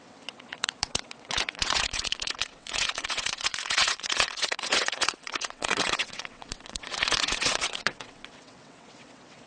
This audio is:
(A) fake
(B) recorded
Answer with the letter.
A